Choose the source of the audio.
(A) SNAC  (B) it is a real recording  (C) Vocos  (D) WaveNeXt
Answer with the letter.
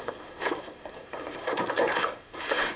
A